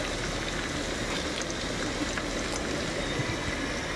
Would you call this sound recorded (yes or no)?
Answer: yes